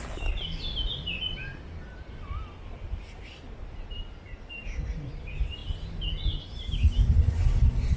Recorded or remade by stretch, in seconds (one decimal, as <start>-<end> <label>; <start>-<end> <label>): 0.0-8.0 recorded